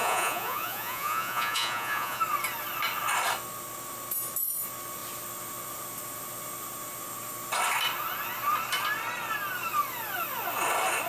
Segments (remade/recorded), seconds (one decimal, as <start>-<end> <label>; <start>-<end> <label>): 0.0-2.2 remade; 2.2-11.1 recorded